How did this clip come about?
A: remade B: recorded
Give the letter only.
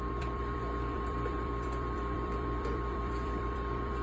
A